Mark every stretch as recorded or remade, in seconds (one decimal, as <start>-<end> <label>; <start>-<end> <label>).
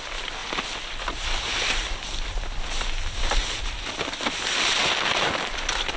0.0-6.0 recorded